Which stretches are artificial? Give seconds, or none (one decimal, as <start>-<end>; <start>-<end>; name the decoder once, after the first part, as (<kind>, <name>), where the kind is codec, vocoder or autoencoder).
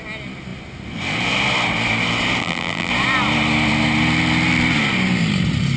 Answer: 2.4-2.9 (vocoder, BigVGAN v2)